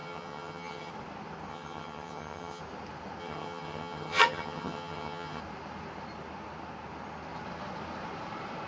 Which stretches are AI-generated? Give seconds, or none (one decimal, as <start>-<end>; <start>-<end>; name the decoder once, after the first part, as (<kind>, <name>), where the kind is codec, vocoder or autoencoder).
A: 0.0-0.9 (vocoder, HiFi-GAN); 1.5-2.6; 3.2-5.4